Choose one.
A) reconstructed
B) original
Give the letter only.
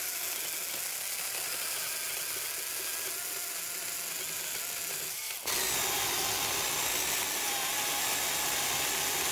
B